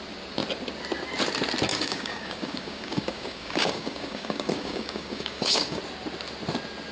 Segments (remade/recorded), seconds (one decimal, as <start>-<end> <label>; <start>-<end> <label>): 0.0-1.7 recorded; 1.7-5.8 remade; 5.8-6.9 recorded